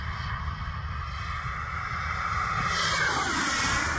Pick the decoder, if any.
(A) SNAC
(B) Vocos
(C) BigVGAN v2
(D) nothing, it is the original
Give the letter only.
D